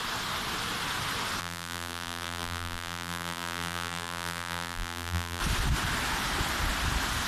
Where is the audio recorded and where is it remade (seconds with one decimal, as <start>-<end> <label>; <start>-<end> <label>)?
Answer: 0.0-1.4 recorded; 1.4-5.4 remade; 5.4-7.3 recorded